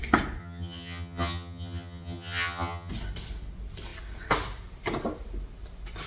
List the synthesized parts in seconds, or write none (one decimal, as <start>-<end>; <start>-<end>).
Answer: 0.4-2.9